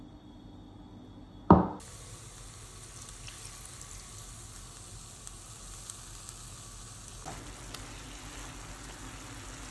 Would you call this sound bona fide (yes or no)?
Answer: yes